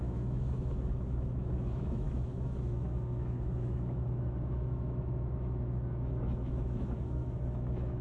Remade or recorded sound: remade